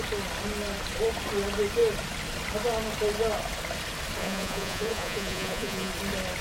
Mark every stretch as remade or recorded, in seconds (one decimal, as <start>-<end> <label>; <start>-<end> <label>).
0.0-4.2 recorded; 4.2-5.9 remade; 5.9-6.4 recorded